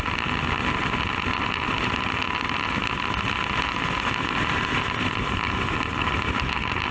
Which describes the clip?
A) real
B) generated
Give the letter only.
A